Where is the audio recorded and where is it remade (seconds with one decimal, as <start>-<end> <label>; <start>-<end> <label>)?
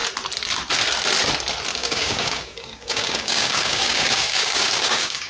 0.0-1.7 recorded; 1.7-5.3 remade